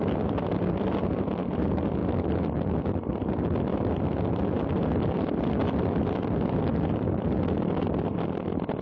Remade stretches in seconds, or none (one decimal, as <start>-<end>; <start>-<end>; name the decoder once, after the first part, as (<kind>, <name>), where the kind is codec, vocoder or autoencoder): none